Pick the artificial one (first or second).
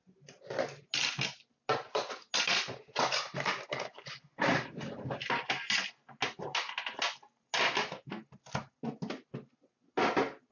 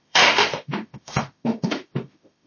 second